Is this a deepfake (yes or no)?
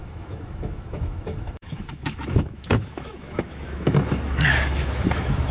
yes